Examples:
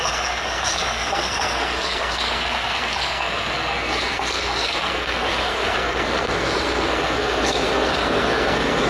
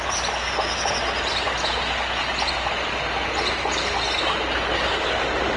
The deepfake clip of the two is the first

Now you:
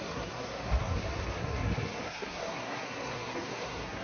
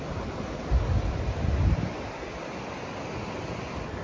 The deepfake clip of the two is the first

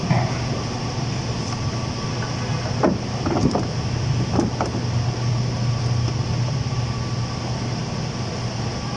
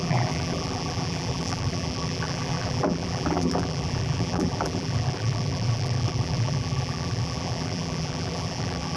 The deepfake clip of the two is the second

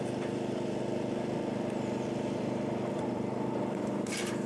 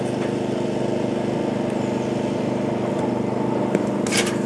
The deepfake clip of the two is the first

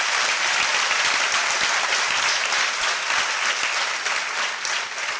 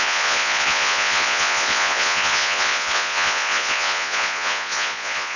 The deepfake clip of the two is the second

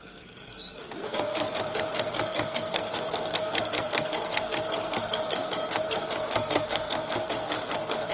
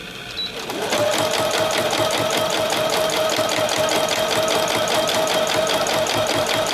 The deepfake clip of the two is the first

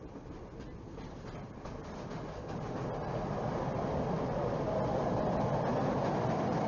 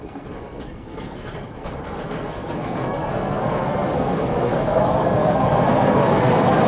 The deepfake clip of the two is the second